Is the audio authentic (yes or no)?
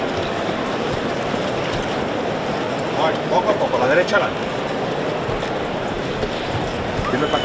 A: no